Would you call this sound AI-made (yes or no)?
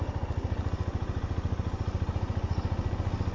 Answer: no